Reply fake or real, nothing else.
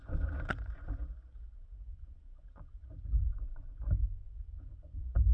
fake